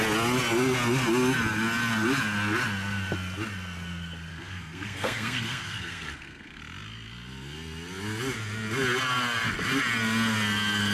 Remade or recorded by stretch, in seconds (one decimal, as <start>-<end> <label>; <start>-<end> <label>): 0.0-4.3 recorded; 4.3-6.6 remade; 6.6-10.9 recorded